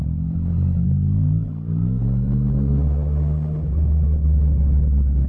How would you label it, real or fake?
real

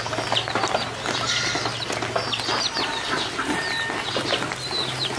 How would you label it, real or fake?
real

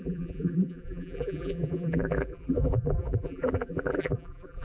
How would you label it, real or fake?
fake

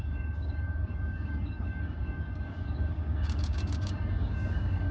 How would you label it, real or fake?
fake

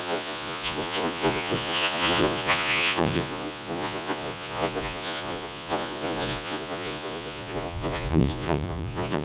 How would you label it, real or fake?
fake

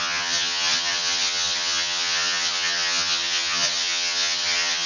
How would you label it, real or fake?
fake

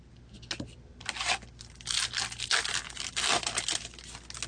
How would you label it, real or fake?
real